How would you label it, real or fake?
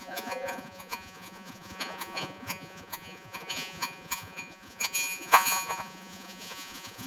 fake